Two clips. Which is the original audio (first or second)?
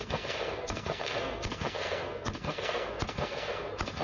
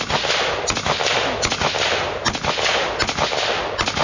second